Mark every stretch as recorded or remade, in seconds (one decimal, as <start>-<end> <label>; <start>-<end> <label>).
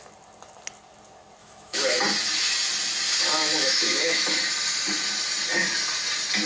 0.0-1.4 recorded; 1.4-2.0 remade; 2.0-3.4 recorded; 3.4-4.4 remade; 4.4-6.5 recorded